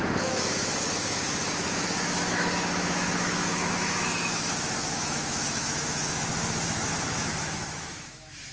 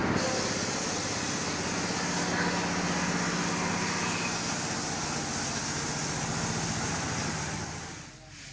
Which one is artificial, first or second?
first